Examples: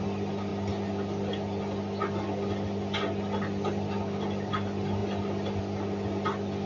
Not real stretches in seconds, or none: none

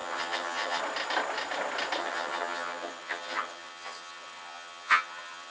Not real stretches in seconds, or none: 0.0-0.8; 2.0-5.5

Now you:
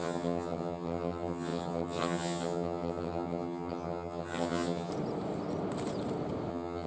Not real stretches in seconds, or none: 0.0-4.9; 6.5-6.9

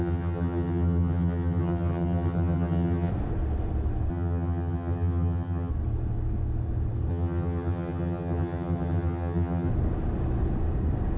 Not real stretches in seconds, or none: 0.0-3.1; 4.1-5.7; 7.1-9.7

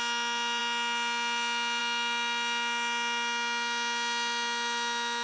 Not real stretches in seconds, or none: none

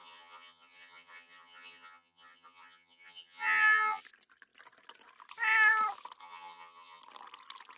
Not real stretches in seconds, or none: 0.0-4.0; 6.2-7.0

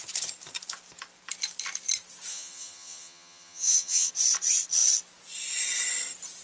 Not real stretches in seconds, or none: 2.3-4.1